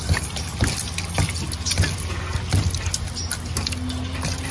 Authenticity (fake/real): real